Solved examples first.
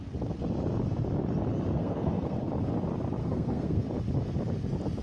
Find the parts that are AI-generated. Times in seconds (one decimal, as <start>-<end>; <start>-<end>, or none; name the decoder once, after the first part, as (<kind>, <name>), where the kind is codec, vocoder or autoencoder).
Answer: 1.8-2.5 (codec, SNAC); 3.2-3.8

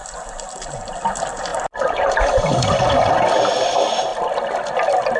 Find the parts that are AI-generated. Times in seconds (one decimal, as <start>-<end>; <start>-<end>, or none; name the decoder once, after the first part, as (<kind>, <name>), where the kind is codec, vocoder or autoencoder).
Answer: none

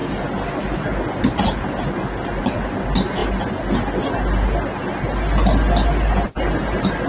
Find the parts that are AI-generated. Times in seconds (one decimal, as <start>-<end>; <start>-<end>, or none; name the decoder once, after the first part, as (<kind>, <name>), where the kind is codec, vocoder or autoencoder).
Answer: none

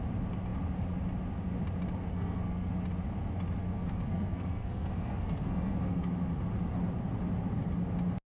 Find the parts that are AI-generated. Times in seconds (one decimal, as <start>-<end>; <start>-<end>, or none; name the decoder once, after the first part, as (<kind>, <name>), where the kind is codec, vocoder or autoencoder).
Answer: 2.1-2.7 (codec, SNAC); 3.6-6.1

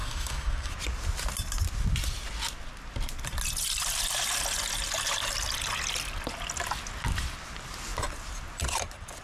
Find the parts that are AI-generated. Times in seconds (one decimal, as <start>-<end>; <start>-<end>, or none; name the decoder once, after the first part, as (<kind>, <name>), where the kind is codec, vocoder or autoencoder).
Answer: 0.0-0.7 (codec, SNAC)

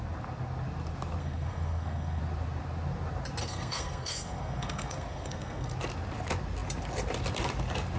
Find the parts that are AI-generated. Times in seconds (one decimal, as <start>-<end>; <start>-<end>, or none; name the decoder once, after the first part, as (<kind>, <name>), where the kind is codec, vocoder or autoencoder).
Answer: 1.2-2.2 (codec, SNAC); 3.4-5.7

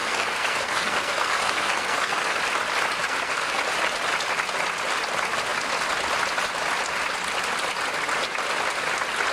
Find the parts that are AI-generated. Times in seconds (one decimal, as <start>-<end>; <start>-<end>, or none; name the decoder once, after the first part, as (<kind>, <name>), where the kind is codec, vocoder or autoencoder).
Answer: 0.0-2.4 (codec, SNAC); 3.0-3.6